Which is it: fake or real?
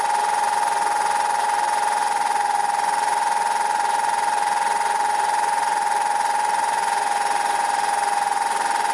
fake